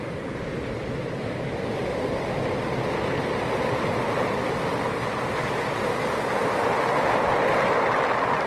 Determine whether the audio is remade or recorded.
recorded